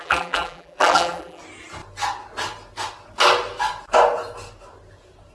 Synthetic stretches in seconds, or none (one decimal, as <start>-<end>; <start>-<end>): 0.0-1.4